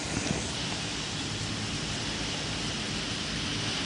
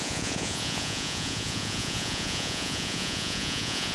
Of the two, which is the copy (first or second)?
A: second